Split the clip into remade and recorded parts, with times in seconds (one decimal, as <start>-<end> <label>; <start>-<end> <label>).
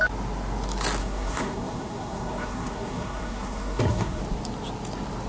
0.0-1.0 recorded; 1.0-4.2 remade; 4.2-5.3 recorded